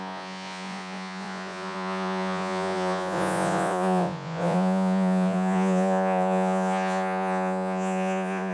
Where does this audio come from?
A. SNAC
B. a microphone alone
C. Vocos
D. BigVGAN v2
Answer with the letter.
C